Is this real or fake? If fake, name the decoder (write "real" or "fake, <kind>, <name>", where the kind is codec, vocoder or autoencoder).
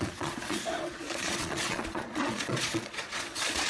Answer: fake, vocoder, Vocos